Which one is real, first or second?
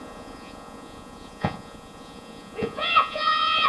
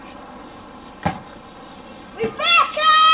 second